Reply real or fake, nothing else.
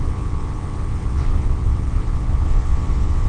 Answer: fake